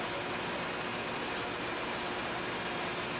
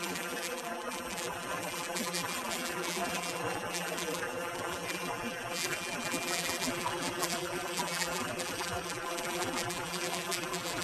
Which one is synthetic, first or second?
second